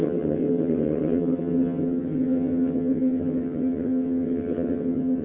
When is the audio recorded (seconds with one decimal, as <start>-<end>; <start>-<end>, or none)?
none